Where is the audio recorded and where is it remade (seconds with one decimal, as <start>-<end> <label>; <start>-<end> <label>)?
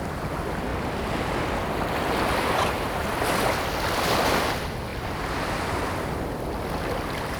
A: 0.0-7.4 recorded